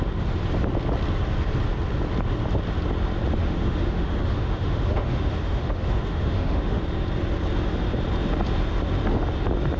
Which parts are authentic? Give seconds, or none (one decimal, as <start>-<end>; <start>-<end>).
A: 0.0-3.4; 6.8-9.8